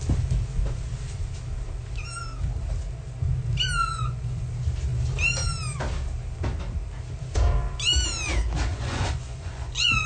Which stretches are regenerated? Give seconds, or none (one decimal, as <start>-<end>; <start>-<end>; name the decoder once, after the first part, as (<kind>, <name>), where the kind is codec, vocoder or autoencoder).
3.8-4.5 (vocoder, Vocos); 8.7-10.1